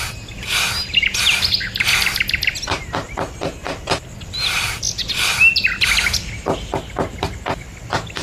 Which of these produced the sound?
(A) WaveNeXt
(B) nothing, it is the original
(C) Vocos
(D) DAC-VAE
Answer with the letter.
B